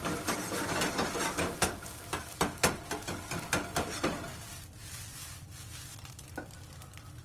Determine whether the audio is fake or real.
real